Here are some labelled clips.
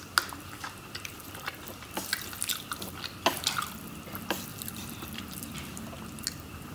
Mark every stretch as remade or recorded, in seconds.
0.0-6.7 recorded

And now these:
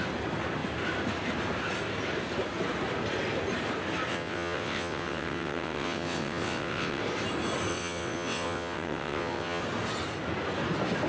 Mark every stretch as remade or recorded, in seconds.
0.0-4.1 recorded; 4.1-7.0 remade; 7.0-7.7 recorded; 7.7-9.6 remade; 9.6-11.1 recorded

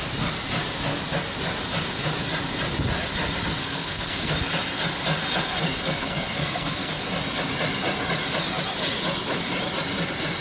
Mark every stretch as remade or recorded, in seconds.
0.0-3.6 recorded; 3.6-4.3 remade; 4.3-5.6 recorded; 5.6-7.0 remade; 7.0-10.4 recorded

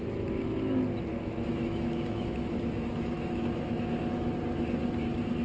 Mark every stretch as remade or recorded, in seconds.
0.0-1.1 recorded; 1.1-4.3 remade; 4.3-5.4 recorded

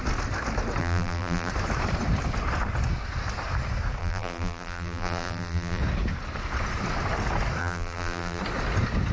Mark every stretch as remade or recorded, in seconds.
0.0-0.8 recorded; 0.8-1.5 remade; 1.5-4.0 recorded; 4.0-5.8 remade; 5.8-7.6 recorded; 7.6-8.4 remade; 8.4-9.1 recorded

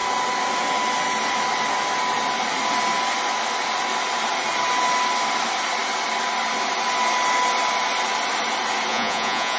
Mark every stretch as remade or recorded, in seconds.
0.0-8.9 recorded; 8.9-9.6 remade